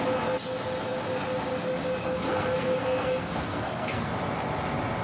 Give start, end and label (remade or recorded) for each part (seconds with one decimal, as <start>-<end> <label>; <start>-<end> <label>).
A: 0.0-2.0 recorded; 2.0-4.1 remade; 4.1-5.0 recorded